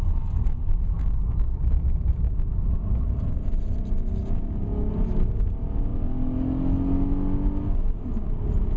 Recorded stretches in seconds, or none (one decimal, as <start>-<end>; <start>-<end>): 0.0-1.0; 1.7-4.2; 4.9-8.8